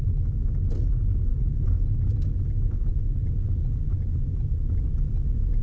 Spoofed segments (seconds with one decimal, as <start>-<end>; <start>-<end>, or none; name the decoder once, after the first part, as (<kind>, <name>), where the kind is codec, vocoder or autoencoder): none